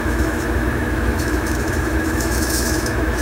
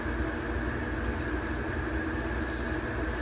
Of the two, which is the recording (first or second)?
second